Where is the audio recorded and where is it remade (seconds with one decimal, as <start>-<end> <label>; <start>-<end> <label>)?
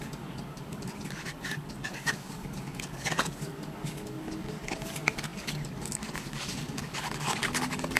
0.0-8.0 remade